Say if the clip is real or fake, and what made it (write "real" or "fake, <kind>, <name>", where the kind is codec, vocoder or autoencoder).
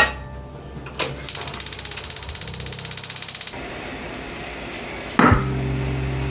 real